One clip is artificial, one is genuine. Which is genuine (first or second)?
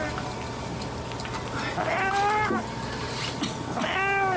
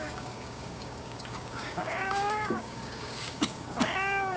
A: first